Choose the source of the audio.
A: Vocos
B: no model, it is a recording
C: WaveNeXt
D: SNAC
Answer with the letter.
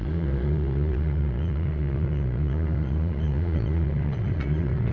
A